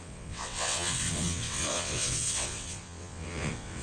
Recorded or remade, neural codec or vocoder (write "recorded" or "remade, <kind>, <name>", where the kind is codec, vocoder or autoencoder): remade, vocoder, WaveNeXt